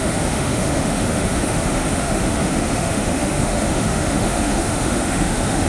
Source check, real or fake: fake